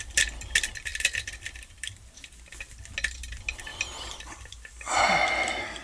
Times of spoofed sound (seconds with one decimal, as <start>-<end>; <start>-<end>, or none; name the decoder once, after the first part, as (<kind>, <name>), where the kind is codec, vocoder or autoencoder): 0.9-2.0 (vocoder, BigVGAN v2); 3.7-4.4